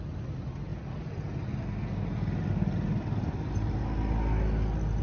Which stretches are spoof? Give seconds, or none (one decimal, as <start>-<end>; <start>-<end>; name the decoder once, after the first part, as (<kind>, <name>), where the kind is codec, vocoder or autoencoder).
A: none